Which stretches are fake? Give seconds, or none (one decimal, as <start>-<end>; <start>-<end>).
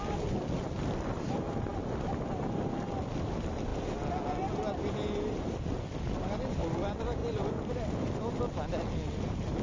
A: 7.2-7.7